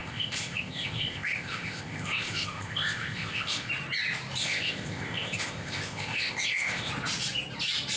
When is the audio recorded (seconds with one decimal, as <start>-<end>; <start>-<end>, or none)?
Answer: 3.7-4.4; 6.9-8.0